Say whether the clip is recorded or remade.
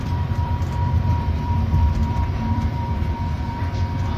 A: remade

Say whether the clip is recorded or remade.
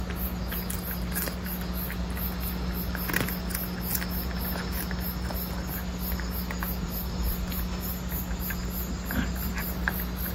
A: recorded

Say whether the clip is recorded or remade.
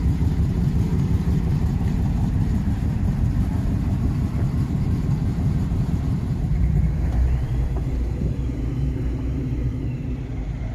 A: remade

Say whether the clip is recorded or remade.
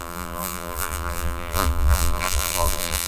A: remade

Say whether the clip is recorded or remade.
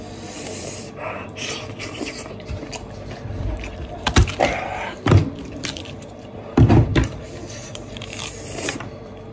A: remade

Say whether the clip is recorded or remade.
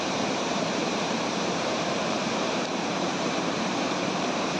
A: remade